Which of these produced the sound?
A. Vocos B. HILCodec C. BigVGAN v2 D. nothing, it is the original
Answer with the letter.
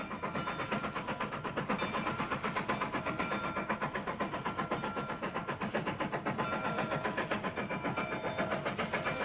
D